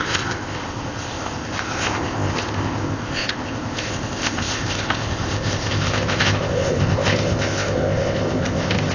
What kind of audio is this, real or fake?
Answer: fake